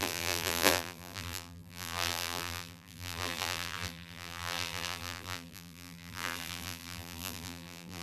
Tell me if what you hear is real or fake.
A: fake